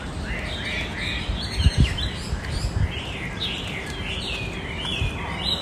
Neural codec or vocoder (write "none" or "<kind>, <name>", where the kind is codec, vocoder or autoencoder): none